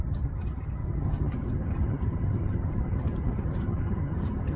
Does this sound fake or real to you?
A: fake